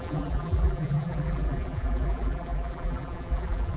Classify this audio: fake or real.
fake